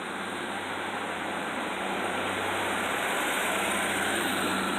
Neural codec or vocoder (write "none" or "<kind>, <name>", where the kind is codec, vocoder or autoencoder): vocoder, BigVGAN v2